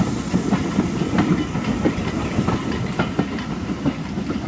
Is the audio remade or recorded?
recorded